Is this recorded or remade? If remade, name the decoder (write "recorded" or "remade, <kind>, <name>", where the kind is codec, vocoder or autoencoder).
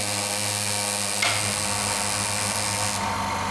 recorded